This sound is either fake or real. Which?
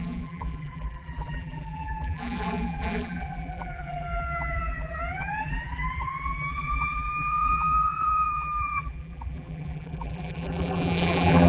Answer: fake